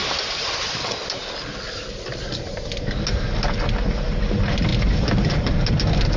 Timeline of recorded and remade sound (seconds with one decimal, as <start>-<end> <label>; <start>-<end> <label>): 0.0-6.2 recorded

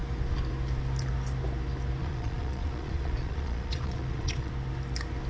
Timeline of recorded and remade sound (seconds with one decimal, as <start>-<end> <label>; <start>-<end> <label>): 0.0-2.0 recorded; 2.0-4.5 remade; 4.5-5.3 recorded

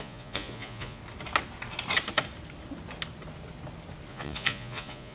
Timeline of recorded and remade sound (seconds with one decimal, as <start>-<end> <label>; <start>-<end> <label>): 0.0-1.0 remade; 1.0-4.1 recorded; 4.1-5.1 remade

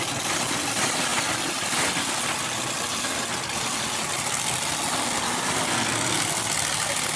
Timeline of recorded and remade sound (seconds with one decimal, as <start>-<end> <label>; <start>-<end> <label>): 0.0-7.2 recorded

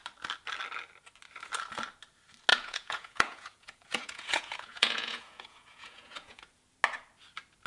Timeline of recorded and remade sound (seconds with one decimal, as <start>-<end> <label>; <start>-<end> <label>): 0.0-2.5 recorded; 2.5-6.6 remade; 6.6-7.7 recorded

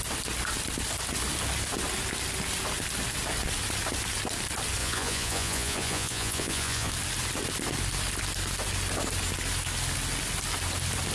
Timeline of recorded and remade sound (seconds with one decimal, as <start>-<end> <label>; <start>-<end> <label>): 0.0-4.8 recorded; 4.8-6.9 remade; 6.9-11.1 recorded